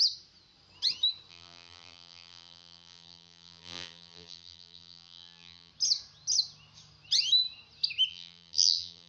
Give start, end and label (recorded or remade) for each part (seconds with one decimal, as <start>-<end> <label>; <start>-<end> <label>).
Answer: 0.0-1.3 recorded; 1.3-5.7 remade; 5.7-8.1 recorded; 8.1-9.1 remade